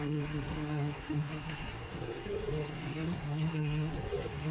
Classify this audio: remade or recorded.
remade